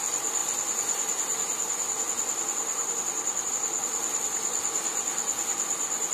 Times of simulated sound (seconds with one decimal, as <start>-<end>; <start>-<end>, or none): none